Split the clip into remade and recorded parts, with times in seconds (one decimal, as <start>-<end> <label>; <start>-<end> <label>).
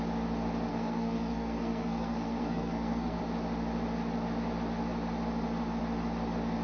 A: 0.0-0.7 recorded; 0.7-3.2 remade; 3.2-6.6 recorded